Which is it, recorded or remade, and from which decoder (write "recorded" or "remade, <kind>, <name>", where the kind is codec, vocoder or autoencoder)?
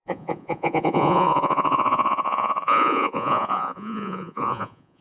remade, vocoder, Vocos